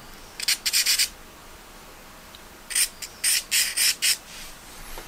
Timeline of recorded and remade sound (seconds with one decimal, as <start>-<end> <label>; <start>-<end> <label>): 0.0-1.4 recorded; 1.4-4.5 remade; 4.5-5.1 recorded